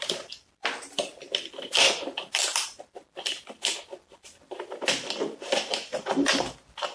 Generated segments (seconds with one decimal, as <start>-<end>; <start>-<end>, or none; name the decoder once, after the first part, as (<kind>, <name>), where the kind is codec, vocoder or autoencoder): none